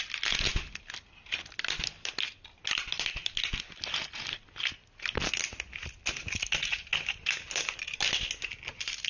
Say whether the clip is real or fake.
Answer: real